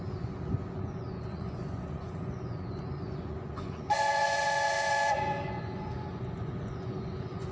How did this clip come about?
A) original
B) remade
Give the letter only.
B